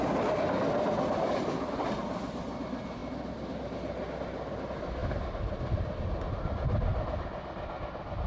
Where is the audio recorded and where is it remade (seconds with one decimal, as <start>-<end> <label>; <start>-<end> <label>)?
0.0-8.3 recorded